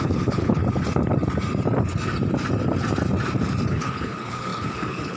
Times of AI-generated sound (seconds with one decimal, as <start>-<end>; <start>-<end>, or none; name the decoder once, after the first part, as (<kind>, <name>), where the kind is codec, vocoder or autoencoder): 0.0-0.6 (codec, HILCodec); 3.7-5.2